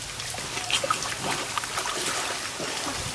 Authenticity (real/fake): real